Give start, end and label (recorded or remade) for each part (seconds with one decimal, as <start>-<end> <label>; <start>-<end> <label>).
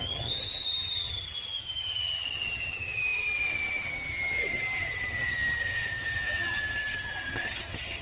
0.0-8.0 remade